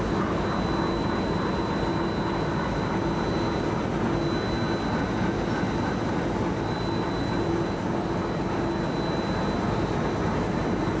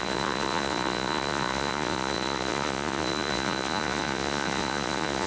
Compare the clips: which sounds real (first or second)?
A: first